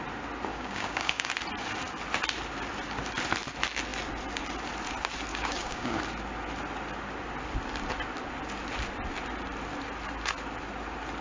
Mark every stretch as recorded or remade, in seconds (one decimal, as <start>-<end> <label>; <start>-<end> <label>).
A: 0.0-0.5 recorded; 0.5-1.3 remade; 1.3-5.3 recorded; 5.3-6.0 remade; 6.0-11.2 recorded